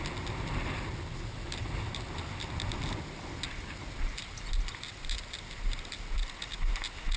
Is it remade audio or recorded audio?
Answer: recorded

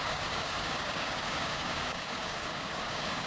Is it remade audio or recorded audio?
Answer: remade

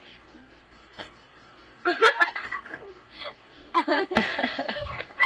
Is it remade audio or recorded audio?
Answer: remade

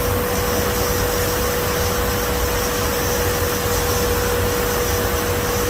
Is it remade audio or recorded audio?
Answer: recorded